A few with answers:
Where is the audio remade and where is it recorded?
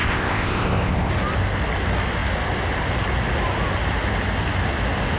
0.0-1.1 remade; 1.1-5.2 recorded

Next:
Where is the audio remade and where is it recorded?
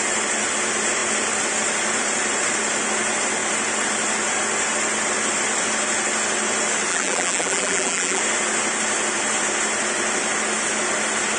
0.0-6.9 recorded; 6.9-8.2 remade; 8.2-11.4 recorded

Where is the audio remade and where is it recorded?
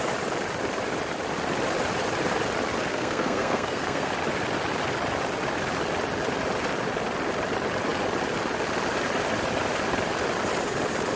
0.0-2.9 recorded; 2.9-4.1 remade; 4.1-11.2 recorded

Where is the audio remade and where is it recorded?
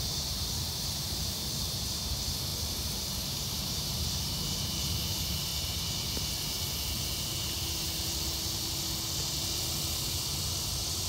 0.0-5.5 remade; 5.5-10.7 recorded; 10.7-11.1 remade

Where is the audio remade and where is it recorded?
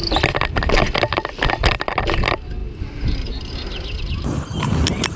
0.0-5.2 recorded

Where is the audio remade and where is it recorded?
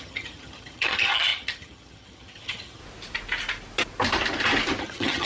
0.0-2.8 remade; 2.8-4.8 recorded; 4.8-5.2 remade